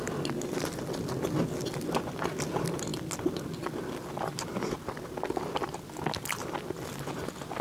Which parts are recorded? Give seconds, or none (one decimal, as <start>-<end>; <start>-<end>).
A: 0.0-7.6

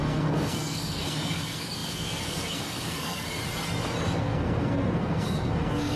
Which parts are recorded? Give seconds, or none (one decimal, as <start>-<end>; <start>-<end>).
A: 3.4-4.2